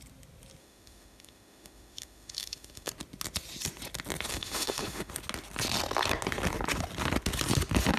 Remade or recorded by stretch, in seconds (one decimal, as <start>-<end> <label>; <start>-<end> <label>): 0.0-0.6 recorded; 0.6-2.9 remade; 2.9-4.3 recorded; 4.3-5.1 remade; 5.1-8.0 recorded